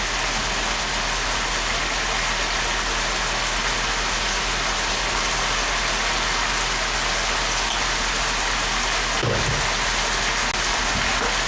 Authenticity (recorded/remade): recorded